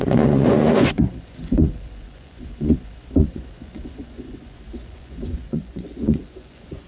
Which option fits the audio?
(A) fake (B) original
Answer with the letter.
A